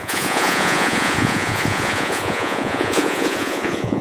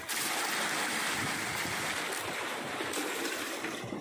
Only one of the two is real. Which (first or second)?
second